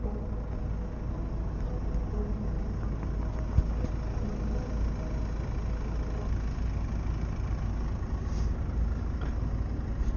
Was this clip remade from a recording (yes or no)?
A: no